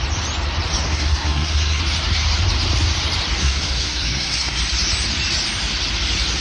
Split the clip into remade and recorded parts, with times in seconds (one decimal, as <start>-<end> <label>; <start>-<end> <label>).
0.0-0.9 recorded; 0.9-1.8 remade; 1.8-3.4 recorded; 3.4-4.6 remade; 4.6-6.4 recorded